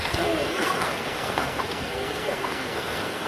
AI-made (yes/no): yes